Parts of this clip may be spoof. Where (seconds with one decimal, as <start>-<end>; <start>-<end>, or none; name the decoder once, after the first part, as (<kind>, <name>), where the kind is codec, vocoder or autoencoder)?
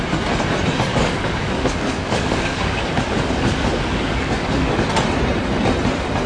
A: 0.9-4.7 (codec, DAC)